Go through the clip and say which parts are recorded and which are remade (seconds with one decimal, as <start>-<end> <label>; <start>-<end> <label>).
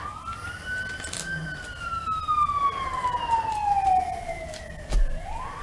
0.0-5.6 recorded